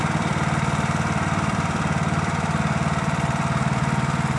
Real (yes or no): no